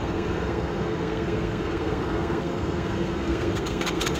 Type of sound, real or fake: fake